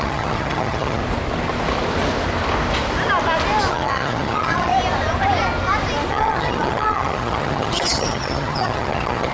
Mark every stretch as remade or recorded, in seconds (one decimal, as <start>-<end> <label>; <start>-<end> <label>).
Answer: 0.0-1.0 remade; 1.0-3.7 recorded; 3.7-4.7 remade; 4.7-6.1 recorded; 6.1-9.3 remade